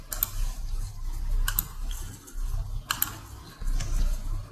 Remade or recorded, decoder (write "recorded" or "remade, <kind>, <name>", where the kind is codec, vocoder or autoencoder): recorded